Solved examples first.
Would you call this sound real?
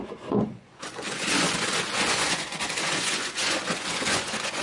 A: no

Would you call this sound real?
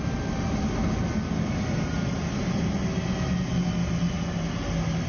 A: yes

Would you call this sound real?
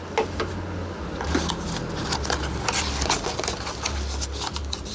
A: yes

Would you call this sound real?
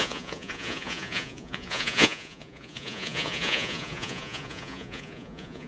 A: no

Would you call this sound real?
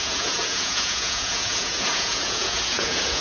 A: no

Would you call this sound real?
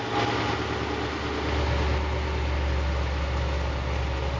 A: yes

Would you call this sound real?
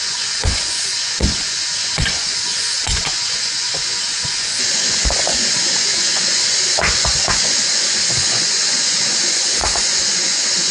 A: no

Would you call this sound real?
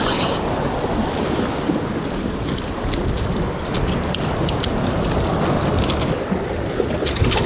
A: yes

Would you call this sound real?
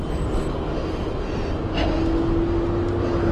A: yes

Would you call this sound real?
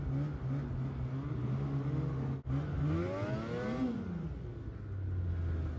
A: yes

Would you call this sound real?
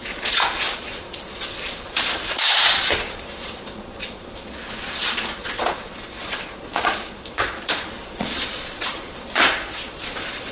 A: no